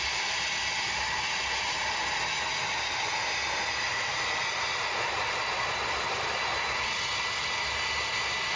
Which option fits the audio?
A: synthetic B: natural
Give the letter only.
B